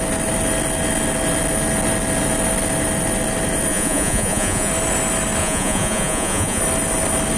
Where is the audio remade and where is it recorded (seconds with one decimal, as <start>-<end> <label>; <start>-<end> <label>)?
0.0-3.7 recorded; 3.7-4.7 remade; 4.7-5.4 recorded; 5.4-6.6 remade; 6.6-7.4 recorded